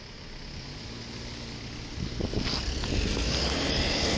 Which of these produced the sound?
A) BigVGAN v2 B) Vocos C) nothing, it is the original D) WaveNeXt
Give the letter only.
C